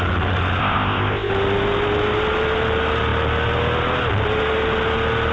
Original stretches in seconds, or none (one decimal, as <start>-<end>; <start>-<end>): 0.0-0.6; 1.3-5.3